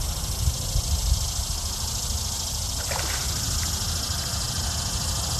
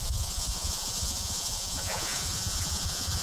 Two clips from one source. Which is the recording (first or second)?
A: first